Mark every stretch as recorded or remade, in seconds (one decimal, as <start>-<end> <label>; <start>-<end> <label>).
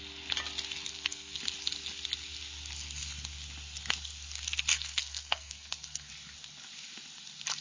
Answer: 0.0-0.9 recorded; 0.9-1.4 remade; 1.4-4.7 recorded; 4.7-6.1 remade; 6.1-7.6 recorded